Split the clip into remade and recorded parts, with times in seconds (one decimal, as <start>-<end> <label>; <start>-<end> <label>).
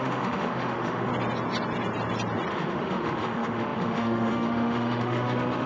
0.0-1.1 remade; 1.1-2.5 recorded; 2.5-5.7 remade